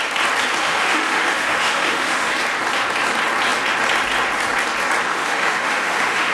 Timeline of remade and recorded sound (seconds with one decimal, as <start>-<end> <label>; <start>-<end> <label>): 0.0-0.6 recorded; 0.6-2.3 remade; 2.3-5.1 recorded; 5.1-6.3 remade